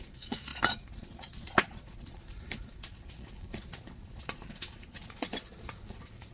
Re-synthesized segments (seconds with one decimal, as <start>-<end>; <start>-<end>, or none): 0.0-6.3